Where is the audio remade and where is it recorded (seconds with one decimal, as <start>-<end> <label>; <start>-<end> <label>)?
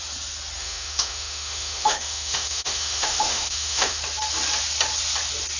0.0-0.6 recorded; 0.6-4.0 remade; 4.0-5.6 recorded